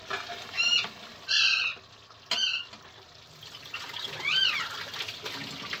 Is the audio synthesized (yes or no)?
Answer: no